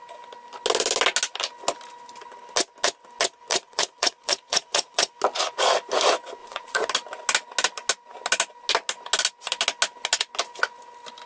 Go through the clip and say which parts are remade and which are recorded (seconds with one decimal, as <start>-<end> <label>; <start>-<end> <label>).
0.0-3.5 recorded; 3.5-5.1 remade; 5.1-6.4 recorded; 6.4-6.9 remade; 6.9-11.3 recorded